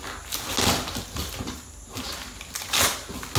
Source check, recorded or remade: recorded